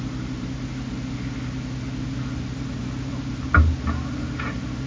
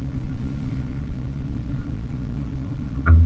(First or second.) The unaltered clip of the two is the first